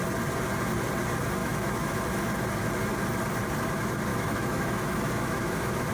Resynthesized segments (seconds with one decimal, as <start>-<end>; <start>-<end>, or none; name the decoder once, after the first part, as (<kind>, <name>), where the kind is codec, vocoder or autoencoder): 1.4-1.9 (autoencoder, DAC-VAE); 4.1-5.9

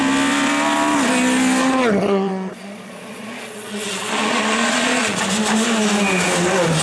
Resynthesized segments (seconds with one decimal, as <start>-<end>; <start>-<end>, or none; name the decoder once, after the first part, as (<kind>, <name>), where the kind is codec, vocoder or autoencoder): 1.6-5.2 (vocoder, Vocos)